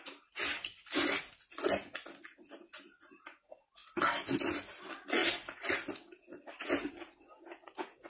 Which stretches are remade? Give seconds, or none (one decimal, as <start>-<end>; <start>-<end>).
none

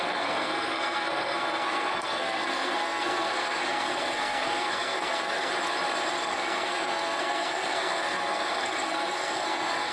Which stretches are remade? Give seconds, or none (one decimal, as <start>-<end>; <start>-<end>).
0.0-5.5; 6.2-9.9

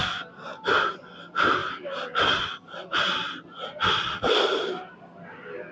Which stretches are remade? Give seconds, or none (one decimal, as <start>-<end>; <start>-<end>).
1.6-5.0

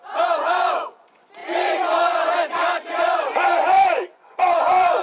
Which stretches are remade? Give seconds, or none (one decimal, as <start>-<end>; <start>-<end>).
0.0-5.0

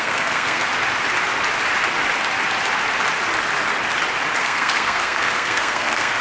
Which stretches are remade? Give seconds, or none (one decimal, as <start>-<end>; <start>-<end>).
0.0-0.7; 4.4-6.2

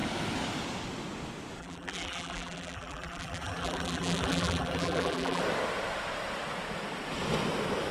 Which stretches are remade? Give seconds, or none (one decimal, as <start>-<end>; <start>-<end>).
1.6-5.4

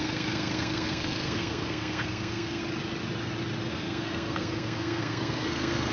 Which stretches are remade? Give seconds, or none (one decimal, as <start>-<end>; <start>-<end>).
0.0-2.6; 3.7-5.9